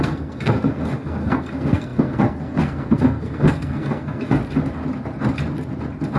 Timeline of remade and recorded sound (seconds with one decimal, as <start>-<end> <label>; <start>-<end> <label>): 0.0-4.4 remade; 4.4-6.2 recorded